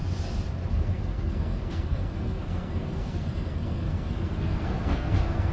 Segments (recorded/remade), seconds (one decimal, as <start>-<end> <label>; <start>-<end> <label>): 0.0-0.7 recorded; 0.7-5.5 remade